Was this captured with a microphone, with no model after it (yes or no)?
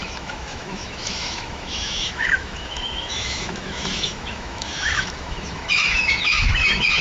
no